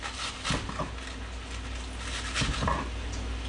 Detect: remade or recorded recorded